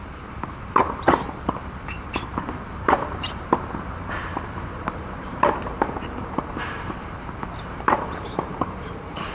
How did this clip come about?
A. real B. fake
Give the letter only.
B